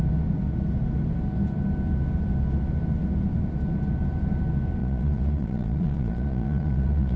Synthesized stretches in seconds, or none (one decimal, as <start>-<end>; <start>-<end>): 4.8-7.2